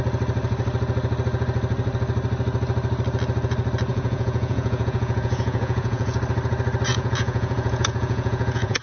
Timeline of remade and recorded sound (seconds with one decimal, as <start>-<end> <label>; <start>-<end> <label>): 0.0-3.9 recorded; 3.9-6.2 remade; 6.2-6.9 recorded; 6.9-8.8 remade